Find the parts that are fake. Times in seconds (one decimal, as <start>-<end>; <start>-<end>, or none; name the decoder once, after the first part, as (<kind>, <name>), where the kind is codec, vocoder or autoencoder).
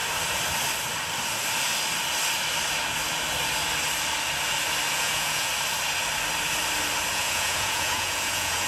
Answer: 4.9-5.5 (vocoder, Vocos); 7.1-8.7